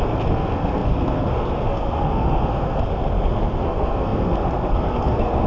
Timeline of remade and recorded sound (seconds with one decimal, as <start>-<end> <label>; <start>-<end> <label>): 0.0-5.5 remade